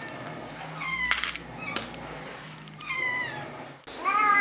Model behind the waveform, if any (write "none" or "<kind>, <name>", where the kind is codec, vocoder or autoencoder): none